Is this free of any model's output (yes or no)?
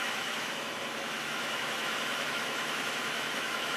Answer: no